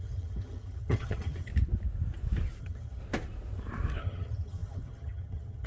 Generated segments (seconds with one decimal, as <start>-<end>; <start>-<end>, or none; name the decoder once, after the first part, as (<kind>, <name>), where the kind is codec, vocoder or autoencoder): 0.0-1.5 (vocoder, HiFi-GAN); 2.6-3.0; 4.0-5.7